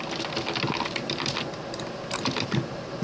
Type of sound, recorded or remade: recorded